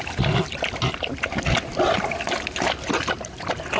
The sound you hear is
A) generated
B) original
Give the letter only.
A